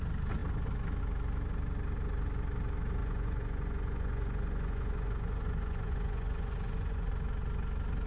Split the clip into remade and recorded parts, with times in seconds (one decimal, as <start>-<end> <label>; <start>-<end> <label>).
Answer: 0.0-3.0 recorded; 3.0-7.1 remade; 7.1-8.1 recorded